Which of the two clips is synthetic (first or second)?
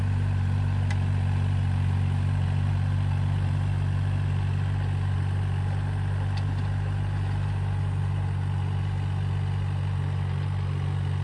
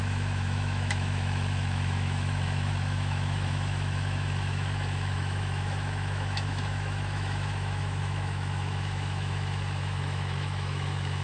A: second